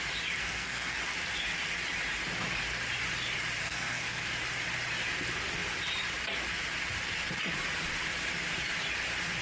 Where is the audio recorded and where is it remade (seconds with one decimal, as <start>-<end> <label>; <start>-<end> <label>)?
0.0-0.4 recorded; 0.4-1.0 remade; 1.0-3.6 recorded; 3.6-4.3 remade; 4.3-9.4 recorded